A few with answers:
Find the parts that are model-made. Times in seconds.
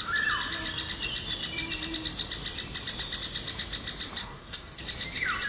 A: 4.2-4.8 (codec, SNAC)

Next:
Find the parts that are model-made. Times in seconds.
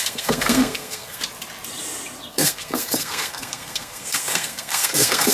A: 0.0-1.2 (codec, SNAC); 2.3-5.3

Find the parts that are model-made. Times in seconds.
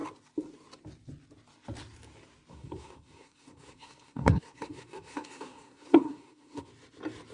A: 2.5-6.7 (codec, SNAC)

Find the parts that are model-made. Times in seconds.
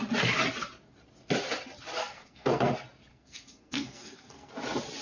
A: 2.0-2.7 (codec, SNAC); 3.1-4.5